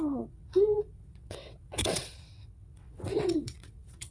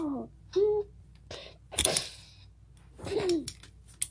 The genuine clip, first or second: second